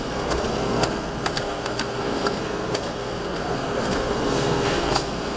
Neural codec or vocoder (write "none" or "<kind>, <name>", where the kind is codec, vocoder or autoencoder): codec, SNAC